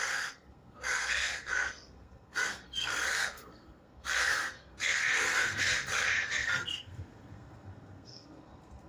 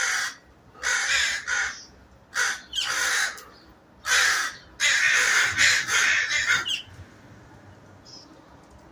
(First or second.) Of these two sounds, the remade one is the first